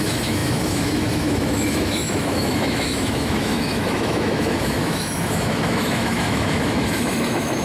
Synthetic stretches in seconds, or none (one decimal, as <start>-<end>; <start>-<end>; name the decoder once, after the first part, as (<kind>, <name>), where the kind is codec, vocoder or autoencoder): 0.0-7.6 (autoencoder, DAC-VAE)